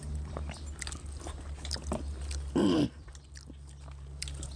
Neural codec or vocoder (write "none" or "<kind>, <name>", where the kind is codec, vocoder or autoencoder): none